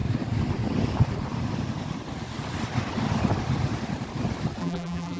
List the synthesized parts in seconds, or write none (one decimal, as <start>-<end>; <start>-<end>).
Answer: 4.6-5.2